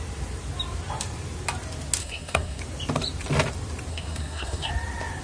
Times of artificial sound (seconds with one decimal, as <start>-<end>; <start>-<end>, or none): 2.0-2.6; 3.9-4.7